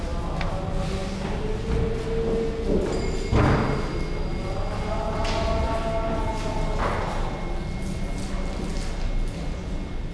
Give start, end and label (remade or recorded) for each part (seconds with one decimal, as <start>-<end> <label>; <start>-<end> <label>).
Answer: 0.0-10.1 recorded